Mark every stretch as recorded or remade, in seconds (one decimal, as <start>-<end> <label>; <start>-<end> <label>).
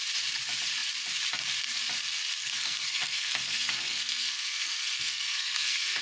0.0-2.4 recorded; 2.4-6.0 remade